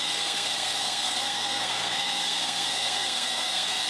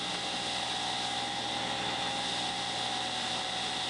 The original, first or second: second